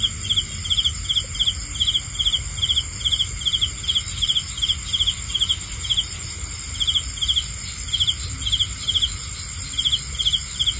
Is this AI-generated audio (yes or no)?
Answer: no